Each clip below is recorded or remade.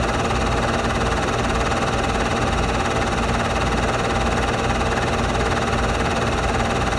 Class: recorded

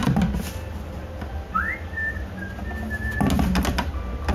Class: recorded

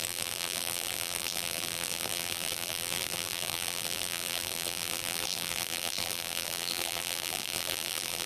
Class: remade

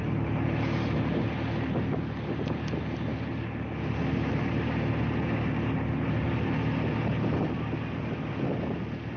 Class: recorded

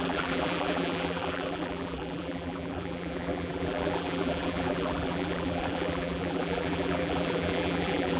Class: remade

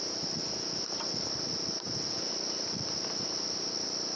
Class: recorded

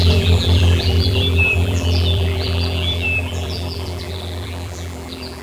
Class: remade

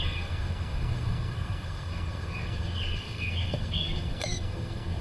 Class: remade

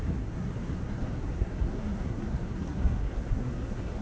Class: remade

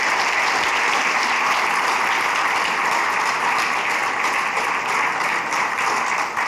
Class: recorded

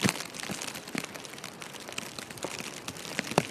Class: recorded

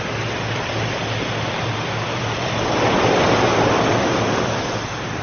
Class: recorded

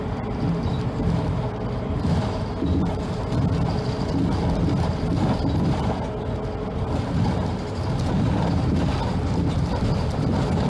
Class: recorded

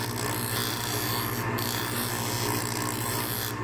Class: recorded